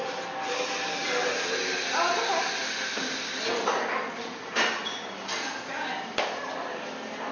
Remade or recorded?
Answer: recorded